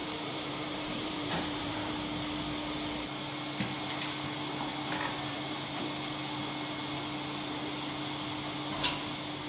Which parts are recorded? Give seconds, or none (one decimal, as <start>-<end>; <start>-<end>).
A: 1.9-5.3; 6.2-9.5